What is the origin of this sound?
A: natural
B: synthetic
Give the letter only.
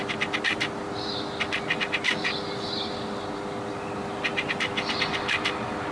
A